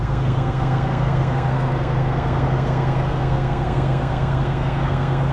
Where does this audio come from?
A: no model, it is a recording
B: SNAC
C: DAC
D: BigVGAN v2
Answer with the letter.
B